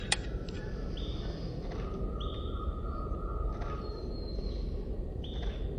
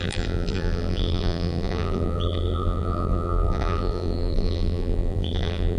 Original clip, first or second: first